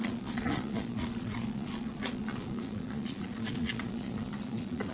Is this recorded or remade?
remade